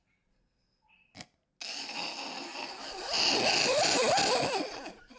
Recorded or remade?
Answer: recorded